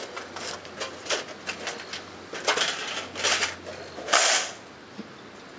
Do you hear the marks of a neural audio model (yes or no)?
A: no